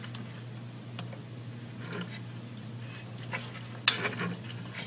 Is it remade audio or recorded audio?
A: recorded